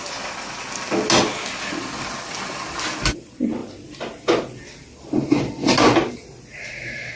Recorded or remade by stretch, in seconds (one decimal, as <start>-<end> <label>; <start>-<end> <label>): 0.0-7.2 recorded